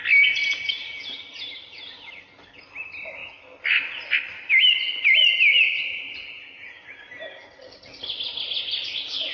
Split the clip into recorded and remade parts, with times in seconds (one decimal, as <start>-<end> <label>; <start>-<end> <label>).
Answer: 0.0-9.3 recorded